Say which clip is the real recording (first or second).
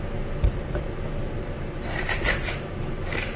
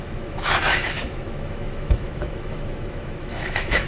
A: first